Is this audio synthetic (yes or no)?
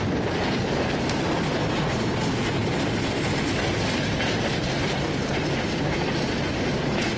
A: no